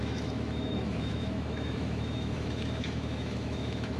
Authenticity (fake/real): fake